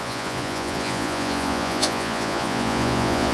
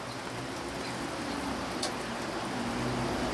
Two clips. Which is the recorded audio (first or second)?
second